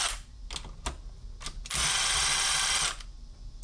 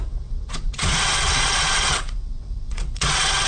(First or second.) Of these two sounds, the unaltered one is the first